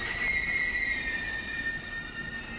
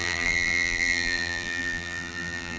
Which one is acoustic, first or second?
first